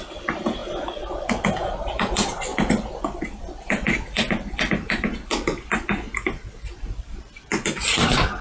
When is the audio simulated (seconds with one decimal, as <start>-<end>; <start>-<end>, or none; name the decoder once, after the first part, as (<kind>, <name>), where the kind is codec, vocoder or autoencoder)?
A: 0.0-8.4 (vocoder, BigVGAN v2)